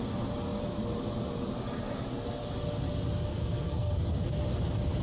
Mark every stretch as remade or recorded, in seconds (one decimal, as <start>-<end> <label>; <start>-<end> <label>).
0.0-3.3 recorded; 3.3-4.4 remade; 4.4-5.0 recorded